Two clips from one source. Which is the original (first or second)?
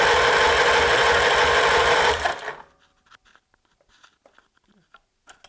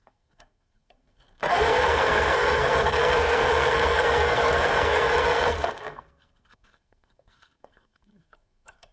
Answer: first